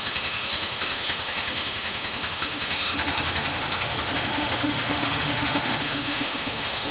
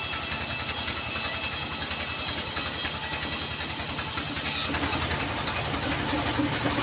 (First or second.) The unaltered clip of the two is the second